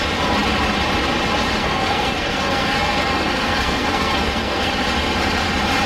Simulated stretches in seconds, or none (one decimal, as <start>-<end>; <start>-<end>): 1.6-4.7

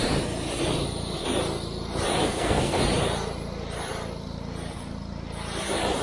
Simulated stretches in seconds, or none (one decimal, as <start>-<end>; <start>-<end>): 2.2-2.8

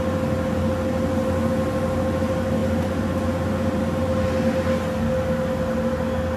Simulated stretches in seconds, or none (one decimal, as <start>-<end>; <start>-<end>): none